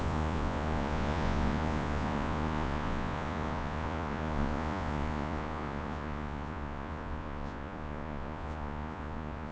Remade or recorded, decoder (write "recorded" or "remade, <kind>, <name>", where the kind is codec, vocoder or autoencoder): remade, vocoder, Vocos